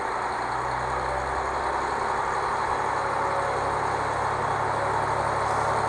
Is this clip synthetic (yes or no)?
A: no